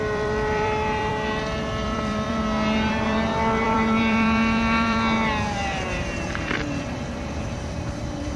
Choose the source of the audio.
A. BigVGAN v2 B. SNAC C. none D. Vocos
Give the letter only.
A